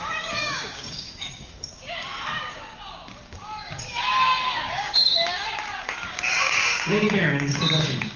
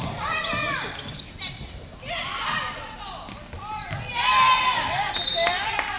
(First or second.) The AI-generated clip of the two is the first